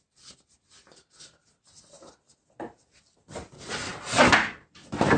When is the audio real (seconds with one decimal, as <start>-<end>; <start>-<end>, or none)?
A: 0.0-5.2